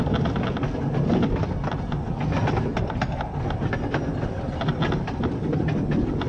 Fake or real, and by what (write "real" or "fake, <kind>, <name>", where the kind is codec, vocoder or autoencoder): real